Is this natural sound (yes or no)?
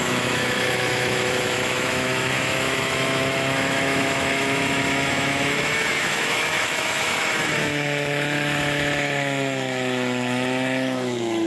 no